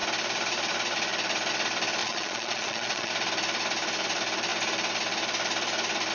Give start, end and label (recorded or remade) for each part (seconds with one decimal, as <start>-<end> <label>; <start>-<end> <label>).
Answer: 0.0-2.0 recorded; 2.0-3.1 remade; 3.1-6.1 recorded